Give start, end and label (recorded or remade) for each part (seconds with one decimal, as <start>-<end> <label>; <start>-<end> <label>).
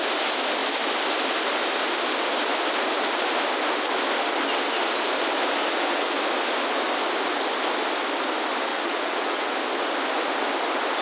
0.0-5.6 recorded; 5.6-6.2 remade; 6.2-8.7 recorded; 8.7-9.5 remade; 9.5-11.0 recorded